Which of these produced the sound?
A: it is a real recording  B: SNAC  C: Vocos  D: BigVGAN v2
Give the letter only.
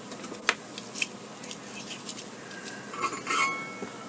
A